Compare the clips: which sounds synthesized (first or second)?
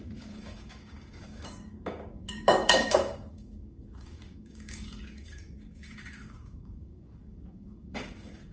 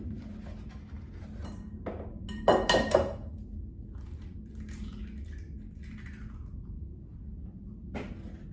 first